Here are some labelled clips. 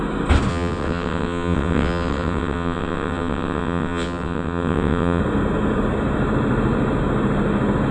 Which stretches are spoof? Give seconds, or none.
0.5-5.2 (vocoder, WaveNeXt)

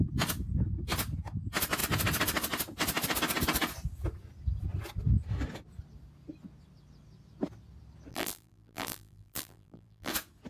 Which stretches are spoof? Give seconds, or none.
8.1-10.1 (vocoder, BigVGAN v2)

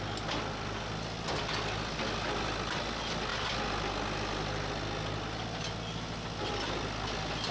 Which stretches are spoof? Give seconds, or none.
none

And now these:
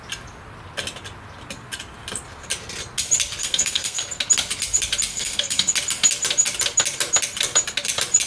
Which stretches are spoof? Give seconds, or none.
3.4-4.0 (codec, SNAC); 5.1-5.7

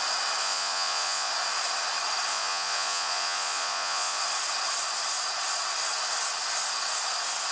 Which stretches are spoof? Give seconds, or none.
0.4-1.3 (vocoder, Vocos); 2.3-4.2